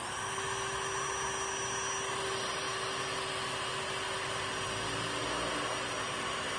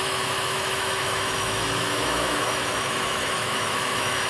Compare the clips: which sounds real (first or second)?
first